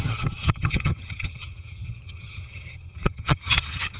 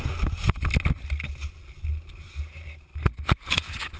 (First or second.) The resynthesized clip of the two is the first